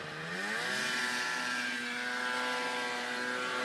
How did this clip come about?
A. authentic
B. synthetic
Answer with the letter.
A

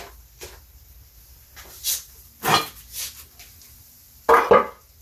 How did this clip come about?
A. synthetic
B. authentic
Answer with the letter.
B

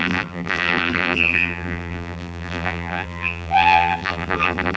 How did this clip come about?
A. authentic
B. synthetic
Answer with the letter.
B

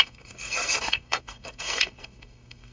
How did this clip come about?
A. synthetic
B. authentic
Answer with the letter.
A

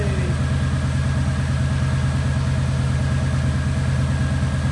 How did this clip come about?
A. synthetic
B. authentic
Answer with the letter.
B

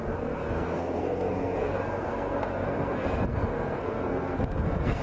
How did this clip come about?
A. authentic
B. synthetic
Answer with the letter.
B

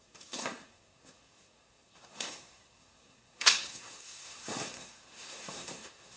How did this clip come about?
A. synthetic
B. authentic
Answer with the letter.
A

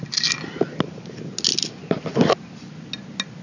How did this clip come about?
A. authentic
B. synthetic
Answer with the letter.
A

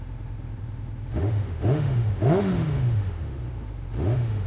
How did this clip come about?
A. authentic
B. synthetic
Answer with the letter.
B